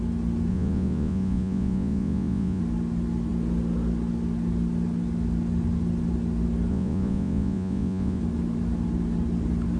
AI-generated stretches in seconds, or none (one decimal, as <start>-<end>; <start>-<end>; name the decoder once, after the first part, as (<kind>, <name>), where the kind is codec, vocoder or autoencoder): 0.5-2.6 (vocoder, Vocos); 6.7-8.2